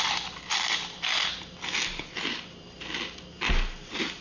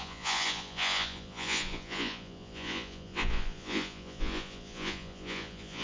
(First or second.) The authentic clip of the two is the first